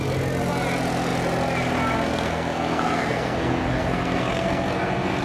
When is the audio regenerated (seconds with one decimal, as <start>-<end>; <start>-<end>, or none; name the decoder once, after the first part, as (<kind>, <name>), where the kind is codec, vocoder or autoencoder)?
2.1-5.2 (codec, SNAC)